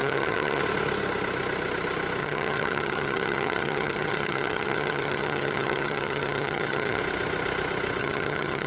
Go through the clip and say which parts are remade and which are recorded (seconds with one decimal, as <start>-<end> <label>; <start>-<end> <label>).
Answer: 0.0-0.6 remade; 0.6-2.2 recorded; 2.2-7.0 remade; 7.0-8.0 recorded; 8.0-8.7 remade